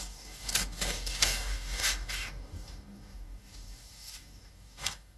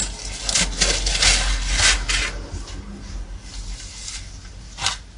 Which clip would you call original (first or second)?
second